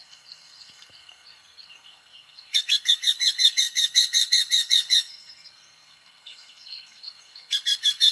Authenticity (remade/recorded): remade